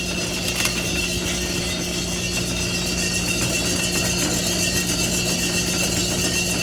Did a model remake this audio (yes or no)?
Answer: no